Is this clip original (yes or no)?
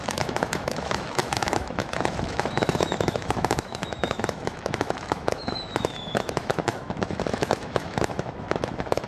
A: no